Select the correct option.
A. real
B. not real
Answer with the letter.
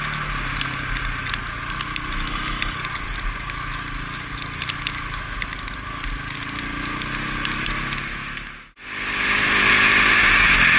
A